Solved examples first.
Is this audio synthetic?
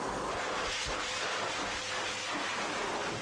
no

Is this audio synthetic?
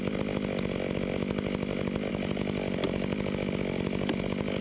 no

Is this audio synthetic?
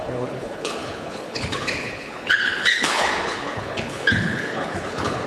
yes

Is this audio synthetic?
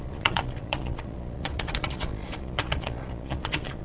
yes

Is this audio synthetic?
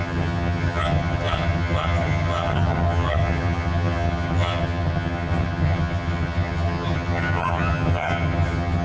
yes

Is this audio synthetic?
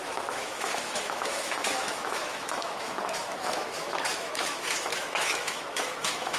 yes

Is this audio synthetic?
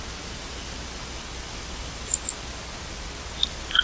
no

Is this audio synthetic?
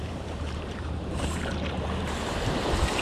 yes